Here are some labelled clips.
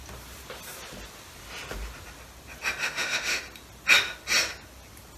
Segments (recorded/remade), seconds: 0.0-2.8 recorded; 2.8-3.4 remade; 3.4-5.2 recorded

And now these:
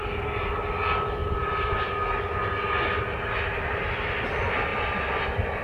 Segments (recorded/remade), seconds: 0.0-1.2 recorded; 1.2-1.9 remade; 1.9-4.7 recorded; 4.7-5.6 remade

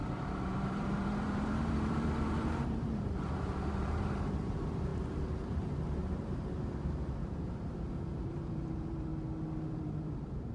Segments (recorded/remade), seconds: 0.0-9.1 remade; 9.1-9.7 recorded; 9.7-10.5 remade

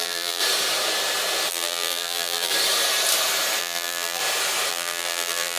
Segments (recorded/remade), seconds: 0.0-0.4 remade; 0.4-1.5 recorded; 1.5-2.5 remade; 2.5-3.6 recorded; 3.6-4.2 remade; 4.2-4.7 recorded; 4.7-5.6 remade

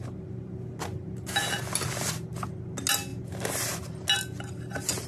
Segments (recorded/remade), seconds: 0.0-5.1 recorded

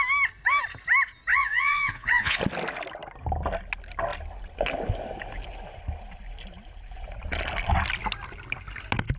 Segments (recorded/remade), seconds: 0.0-1.3 recorded; 1.3-2.4 remade; 2.4-9.2 recorded

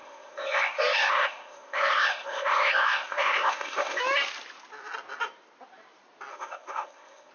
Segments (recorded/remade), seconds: 0.0-4.0 remade; 4.0-6.3 recorded; 6.3-7.3 remade

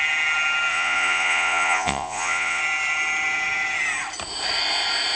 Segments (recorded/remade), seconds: 0.0-0.7 recorded; 0.7-2.6 remade; 2.6-5.2 recorded